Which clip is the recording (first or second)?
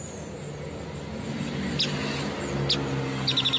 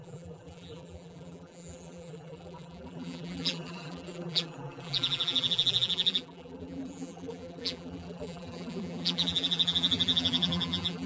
first